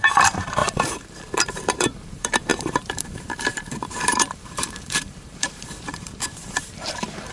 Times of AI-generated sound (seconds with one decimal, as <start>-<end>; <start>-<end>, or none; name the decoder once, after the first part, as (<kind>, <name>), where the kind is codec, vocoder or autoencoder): 0.0-7.3 (vocoder, BigVGAN v2)